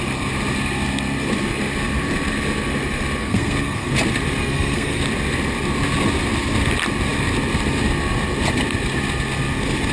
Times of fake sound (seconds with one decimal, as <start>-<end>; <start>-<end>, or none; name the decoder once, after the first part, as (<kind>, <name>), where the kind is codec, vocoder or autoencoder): 3.2-3.9 (codec, SNAC); 4.4-5.0